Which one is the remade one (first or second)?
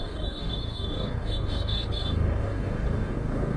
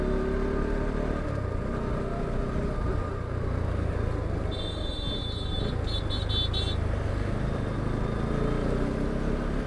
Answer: first